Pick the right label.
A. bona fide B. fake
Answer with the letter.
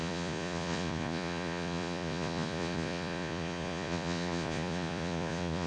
B